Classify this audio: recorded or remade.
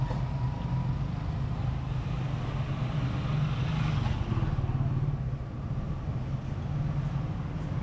recorded